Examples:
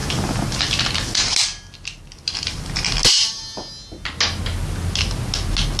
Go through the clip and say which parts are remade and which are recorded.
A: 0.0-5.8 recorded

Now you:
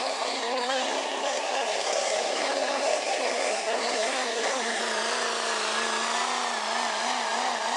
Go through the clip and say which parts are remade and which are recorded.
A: 0.0-4.8 remade; 4.8-7.8 recorded

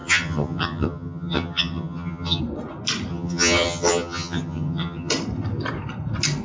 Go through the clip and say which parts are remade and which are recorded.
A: 0.0-2.4 remade; 2.4-3.1 recorded; 3.1-5.1 remade; 5.1-6.4 recorded

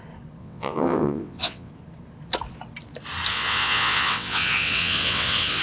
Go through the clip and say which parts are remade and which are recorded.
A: 0.0-0.4 recorded; 0.4-1.7 remade; 1.7-3.3 recorded; 3.3-5.6 remade

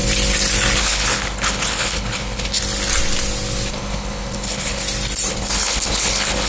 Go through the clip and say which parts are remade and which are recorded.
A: 0.0-0.8 recorded; 0.8-2.6 remade; 2.6-3.7 recorded; 3.7-4.8 remade; 4.8-5.3 recorded; 5.3-6.5 remade